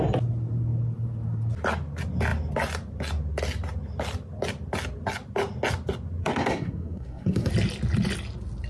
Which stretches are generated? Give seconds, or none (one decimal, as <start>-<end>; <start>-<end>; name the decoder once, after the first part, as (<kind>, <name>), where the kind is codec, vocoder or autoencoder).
6.2-7.5 (codec, SNAC)